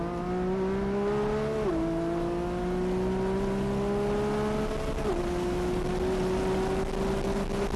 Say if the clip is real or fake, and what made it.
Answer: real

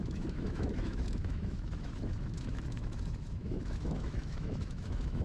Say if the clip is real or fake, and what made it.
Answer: fake, autoencoder, DAC-VAE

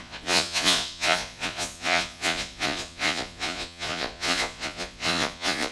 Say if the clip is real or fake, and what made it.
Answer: fake, vocoder, Vocos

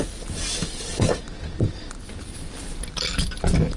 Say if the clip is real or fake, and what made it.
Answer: real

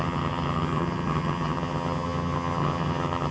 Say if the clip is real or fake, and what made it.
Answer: fake, vocoder, HiFi-GAN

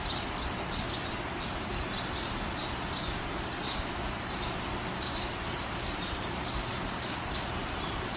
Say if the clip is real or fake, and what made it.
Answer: fake, vocoder, BigVGAN v2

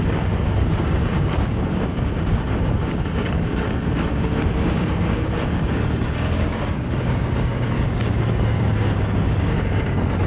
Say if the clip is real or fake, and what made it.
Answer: fake, codec, DAC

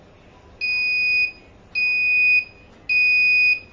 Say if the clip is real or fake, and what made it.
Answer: real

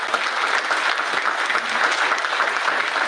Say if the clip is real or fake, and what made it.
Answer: real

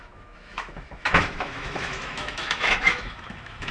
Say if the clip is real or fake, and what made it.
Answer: fake, autoencoder, DAC-VAE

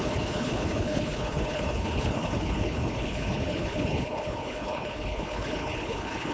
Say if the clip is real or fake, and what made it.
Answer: fake, codec, HILCodec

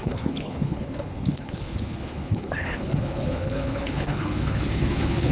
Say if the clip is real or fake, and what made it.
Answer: fake, codec, HILCodec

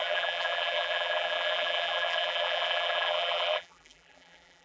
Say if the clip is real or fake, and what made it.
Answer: fake, vocoder, BigVGAN v2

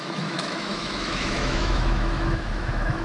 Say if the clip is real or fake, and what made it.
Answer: fake, autoencoder, DAC-VAE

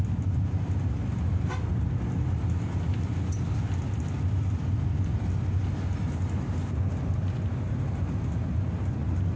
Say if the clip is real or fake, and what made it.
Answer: real